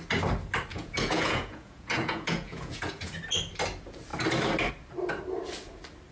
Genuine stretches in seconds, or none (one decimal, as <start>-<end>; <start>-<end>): 0.0-0.7; 3.1-6.1